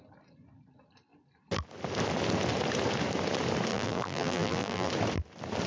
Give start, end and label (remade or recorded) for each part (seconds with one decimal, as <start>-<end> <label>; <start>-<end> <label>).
0.0-3.7 recorded; 3.7-4.9 remade; 4.9-5.7 recorded